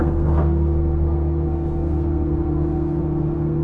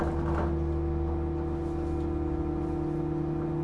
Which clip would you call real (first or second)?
second